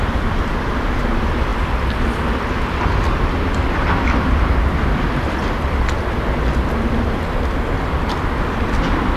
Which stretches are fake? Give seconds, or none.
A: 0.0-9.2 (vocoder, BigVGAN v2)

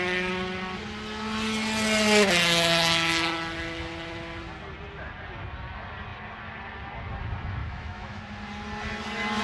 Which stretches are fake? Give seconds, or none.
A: 7.6-8.2 (autoencoder, DAC-VAE)

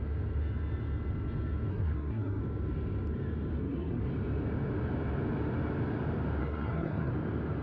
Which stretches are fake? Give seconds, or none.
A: 1.7-2.4 (codec, SNAC); 3.6-4.1; 6.4-7.1

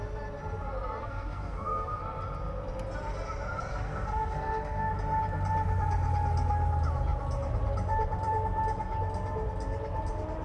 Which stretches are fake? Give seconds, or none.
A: 1.0-2.0 (codec, SNAC); 3.7-4.9

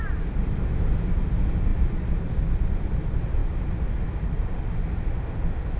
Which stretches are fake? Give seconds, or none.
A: none

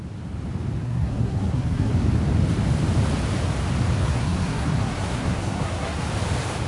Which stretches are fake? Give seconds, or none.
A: 0.8-1.9 (codec, SNAC); 4.0-6.0

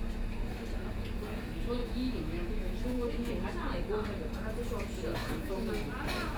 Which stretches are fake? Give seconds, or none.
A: 1.8-3.3 (autoencoder, DAC-VAE); 5.2-5.7

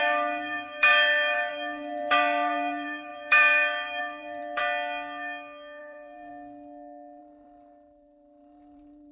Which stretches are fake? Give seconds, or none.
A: 0.0-4.6 (vocoder, BigVGAN v2); 5.8-6.3; 7.2-9.1